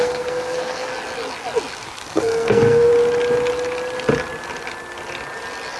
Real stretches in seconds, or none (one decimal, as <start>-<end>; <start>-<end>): 0.9-2.1; 2.9-5.8